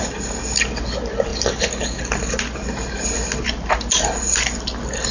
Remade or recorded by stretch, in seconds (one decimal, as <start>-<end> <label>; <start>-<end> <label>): 0.0-5.1 recorded